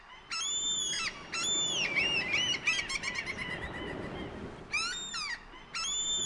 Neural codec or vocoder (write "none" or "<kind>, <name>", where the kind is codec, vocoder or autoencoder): none